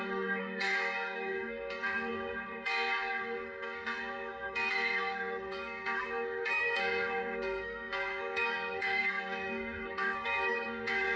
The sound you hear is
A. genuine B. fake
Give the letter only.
B